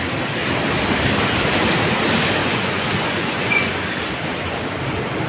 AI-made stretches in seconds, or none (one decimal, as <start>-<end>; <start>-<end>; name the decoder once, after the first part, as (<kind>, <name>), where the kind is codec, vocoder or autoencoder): 2.4-3.7 (vocoder, Vocos)